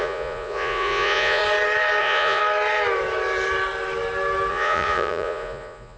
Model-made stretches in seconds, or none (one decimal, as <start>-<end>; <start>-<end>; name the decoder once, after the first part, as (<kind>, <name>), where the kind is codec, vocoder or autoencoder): 0.0-1.4 (vocoder, Vocos); 2.0-2.4; 4.5-6.0